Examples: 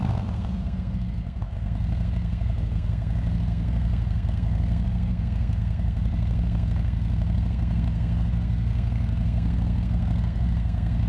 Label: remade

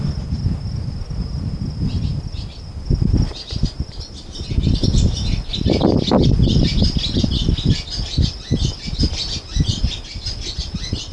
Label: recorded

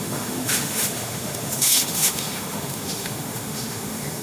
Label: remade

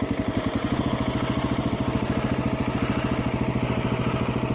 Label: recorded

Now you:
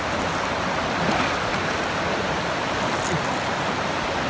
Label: recorded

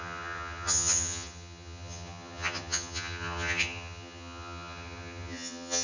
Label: remade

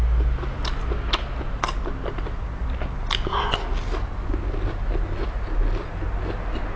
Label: recorded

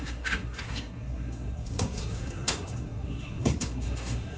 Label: remade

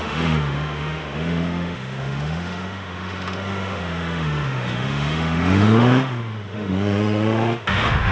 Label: remade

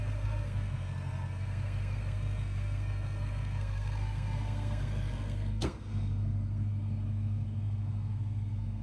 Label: remade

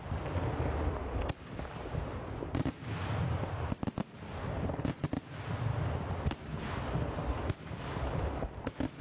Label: recorded